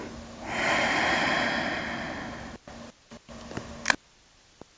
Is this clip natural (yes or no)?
yes